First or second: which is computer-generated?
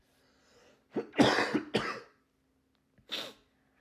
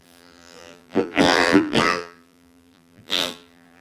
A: second